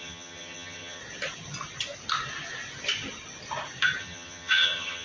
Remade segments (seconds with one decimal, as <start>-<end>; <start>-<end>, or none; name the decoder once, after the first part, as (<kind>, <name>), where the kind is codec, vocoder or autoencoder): 0.0-1.0 (vocoder, HiFi-GAN); 4.0-5.0